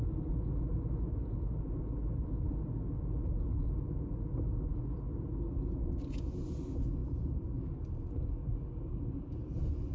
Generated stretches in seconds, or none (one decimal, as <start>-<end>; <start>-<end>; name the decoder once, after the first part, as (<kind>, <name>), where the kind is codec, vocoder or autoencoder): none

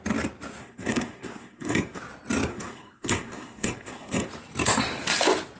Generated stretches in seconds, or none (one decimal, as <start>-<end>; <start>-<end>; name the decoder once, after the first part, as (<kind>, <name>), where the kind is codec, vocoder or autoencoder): 0.6-2.0 (codec, SNAC); 2.5-4.3

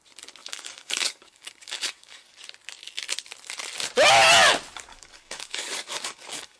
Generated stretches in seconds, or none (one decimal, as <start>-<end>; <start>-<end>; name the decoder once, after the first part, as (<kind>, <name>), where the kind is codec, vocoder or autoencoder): 0.4-2.3 (codec, DAC); 4.9-6.6

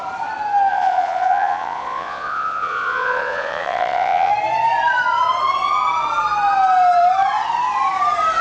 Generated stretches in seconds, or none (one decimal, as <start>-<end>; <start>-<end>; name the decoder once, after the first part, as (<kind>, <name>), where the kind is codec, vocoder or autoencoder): 0.7-4.3 (vocoder, Vocos)